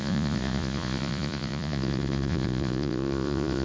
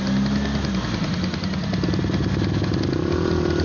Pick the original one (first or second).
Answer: second